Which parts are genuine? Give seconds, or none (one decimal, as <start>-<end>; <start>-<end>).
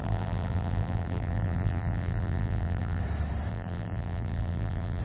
3.0-3.5